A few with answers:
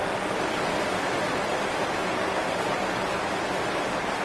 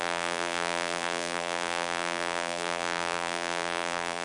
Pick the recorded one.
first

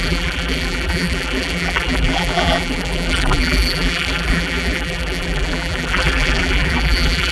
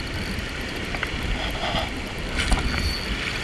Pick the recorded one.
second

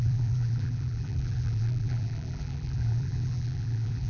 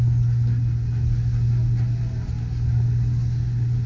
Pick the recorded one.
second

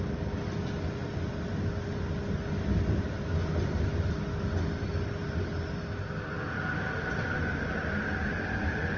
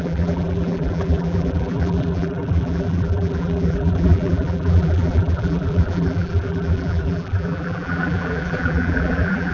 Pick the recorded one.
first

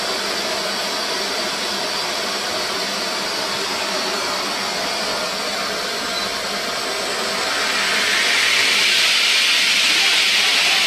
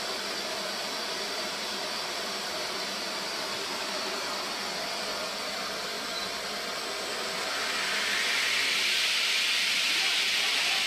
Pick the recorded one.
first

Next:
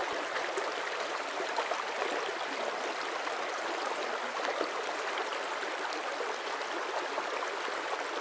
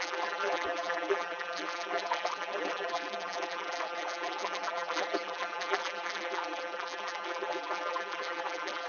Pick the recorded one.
first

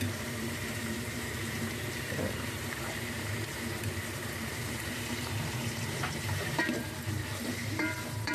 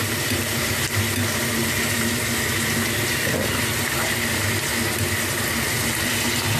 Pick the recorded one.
second